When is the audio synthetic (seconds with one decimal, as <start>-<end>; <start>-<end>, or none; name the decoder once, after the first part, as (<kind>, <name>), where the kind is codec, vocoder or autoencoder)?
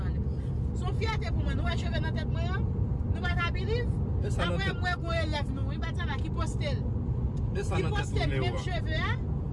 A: none